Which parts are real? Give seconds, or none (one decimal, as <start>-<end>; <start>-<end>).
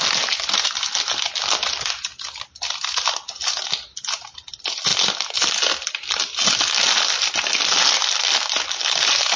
0.0-9.4